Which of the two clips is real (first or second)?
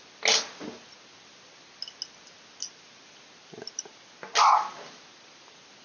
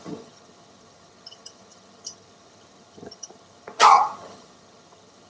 first